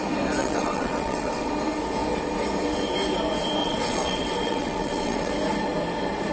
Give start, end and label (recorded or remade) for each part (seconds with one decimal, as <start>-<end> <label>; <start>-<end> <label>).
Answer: 0.0-0.4 recorded; 0.4-1.5 remade; 1.5-3.6 recorded; 3.6-5.3 remade; 5.3-6.3 recorded